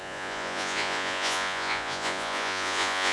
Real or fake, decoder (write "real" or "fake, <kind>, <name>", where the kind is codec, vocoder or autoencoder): fake, vocoder, Vocos